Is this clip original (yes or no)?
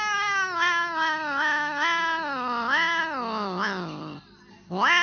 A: yes